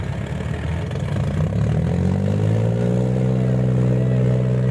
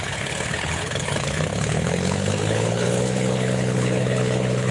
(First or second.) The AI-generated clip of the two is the second